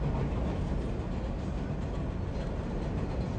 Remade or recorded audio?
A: recorded